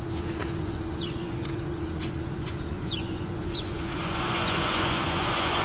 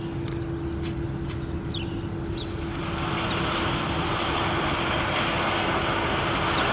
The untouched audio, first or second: second